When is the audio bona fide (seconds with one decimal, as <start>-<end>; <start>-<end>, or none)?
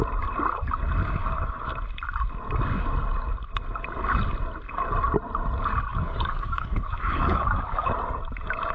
0.0-1.2; 1.7-5.9; 7.9-8.7